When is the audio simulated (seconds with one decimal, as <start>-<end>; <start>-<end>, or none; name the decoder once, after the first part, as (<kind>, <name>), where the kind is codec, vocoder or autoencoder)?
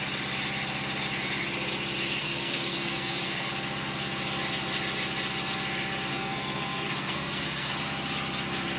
2.2-3.5 (codec, SNAC); 6.1-7.7